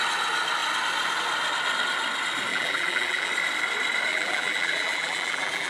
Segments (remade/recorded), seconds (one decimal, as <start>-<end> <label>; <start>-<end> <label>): 0.0-2.5 recorded; 2.5-3.3 remade; 3.3-4.1 recorded; 4.1-5.7 remade